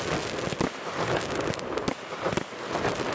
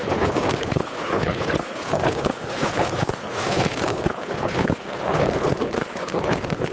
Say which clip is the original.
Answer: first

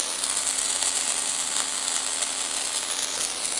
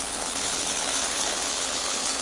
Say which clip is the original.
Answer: first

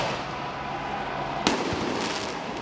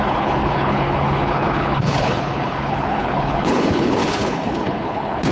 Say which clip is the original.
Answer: first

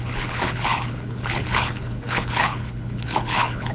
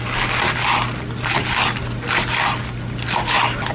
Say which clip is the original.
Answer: second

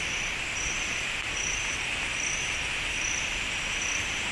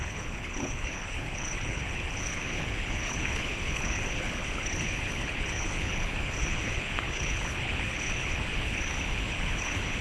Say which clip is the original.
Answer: first